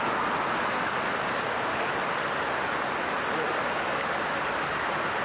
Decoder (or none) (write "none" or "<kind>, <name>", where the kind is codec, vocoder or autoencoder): none